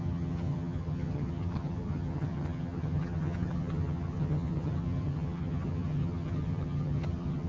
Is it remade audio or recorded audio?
remade